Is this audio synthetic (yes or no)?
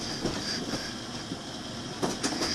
no